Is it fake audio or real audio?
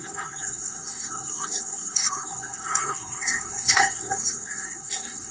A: fake